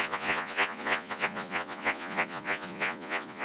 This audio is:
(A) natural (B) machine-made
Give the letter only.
B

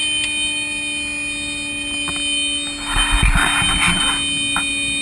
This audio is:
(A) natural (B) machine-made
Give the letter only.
A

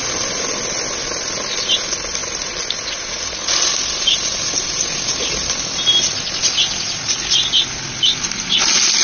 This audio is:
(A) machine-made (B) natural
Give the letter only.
B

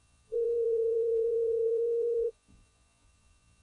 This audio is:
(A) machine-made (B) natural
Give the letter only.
A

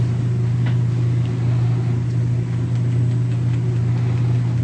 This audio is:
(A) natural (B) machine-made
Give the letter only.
A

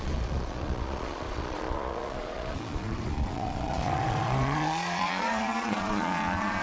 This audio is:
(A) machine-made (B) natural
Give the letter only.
A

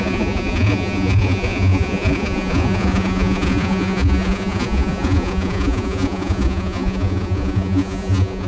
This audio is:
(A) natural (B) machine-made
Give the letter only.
B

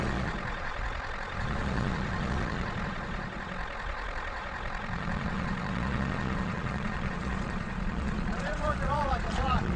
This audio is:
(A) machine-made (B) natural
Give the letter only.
A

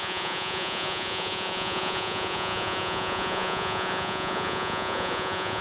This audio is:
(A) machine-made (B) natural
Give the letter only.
A